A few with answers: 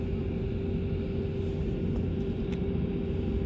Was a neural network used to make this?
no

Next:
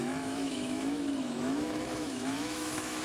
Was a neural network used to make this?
yes